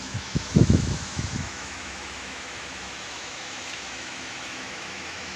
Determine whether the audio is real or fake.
fake